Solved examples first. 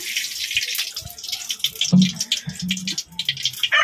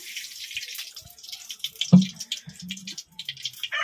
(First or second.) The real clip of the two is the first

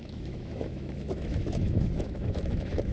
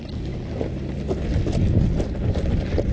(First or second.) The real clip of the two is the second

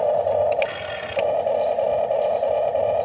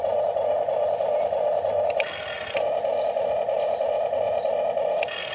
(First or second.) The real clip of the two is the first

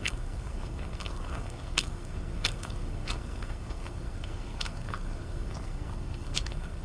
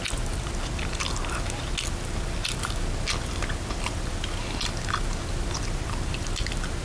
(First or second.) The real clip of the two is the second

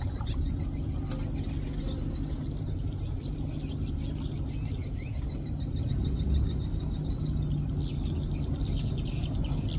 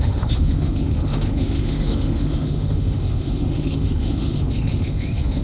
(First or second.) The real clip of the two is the first